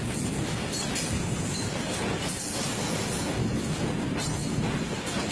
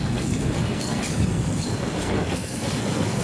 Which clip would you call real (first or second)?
first